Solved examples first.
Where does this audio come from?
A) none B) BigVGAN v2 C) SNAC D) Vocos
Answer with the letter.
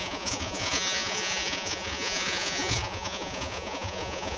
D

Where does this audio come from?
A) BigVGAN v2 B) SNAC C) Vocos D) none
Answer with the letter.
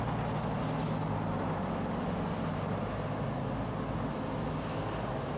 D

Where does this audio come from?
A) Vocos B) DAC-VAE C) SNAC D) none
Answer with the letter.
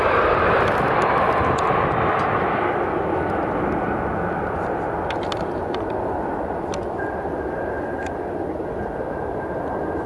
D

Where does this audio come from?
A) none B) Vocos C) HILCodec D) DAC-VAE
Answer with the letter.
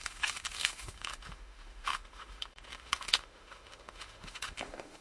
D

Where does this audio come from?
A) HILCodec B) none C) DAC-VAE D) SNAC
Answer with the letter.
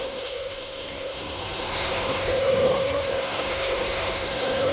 D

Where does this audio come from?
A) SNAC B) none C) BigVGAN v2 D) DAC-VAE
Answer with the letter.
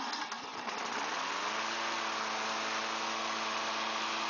B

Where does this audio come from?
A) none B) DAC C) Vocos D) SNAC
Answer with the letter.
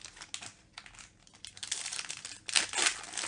A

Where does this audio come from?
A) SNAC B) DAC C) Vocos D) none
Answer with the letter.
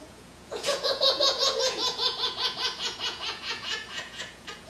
C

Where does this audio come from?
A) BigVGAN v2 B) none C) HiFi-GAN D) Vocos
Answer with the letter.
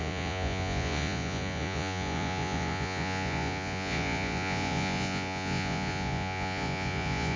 D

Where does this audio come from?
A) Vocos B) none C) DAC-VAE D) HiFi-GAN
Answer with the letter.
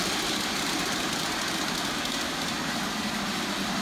B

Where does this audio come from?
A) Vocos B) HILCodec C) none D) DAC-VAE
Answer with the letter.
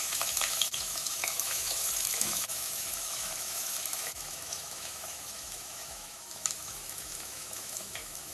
D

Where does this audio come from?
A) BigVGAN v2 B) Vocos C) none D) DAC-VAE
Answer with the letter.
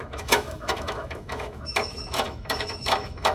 D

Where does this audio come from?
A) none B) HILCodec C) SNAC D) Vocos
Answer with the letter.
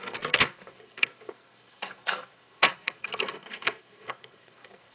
C